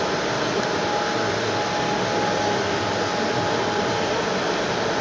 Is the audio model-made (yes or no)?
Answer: no